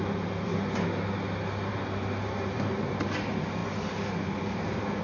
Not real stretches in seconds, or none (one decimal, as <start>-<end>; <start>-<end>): 0.0-0.5; 1.7-5.0